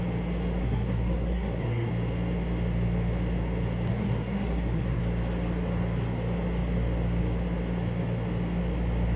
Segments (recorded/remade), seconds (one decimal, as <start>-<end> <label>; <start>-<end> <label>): 0.0-0.6 recorded; 0.6-1.9 remade; 1.9-3.9 recorded; 3.9-5.0 remade; 5.0-9.2 recorded